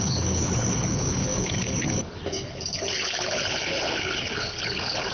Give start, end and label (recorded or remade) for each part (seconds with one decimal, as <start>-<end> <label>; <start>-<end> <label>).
0.0-5.1 remade